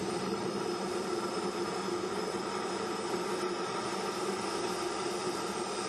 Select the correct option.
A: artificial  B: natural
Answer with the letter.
A